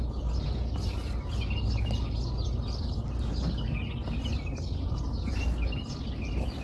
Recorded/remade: recorded